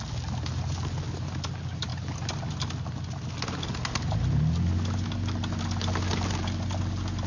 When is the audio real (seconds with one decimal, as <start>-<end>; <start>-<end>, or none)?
0.0-7.3